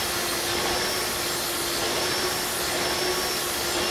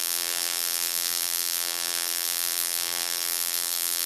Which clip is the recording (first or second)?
first